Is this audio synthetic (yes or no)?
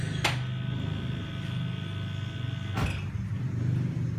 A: no